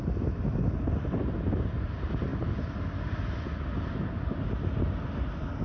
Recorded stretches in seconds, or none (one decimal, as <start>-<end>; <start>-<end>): 0.0-5.6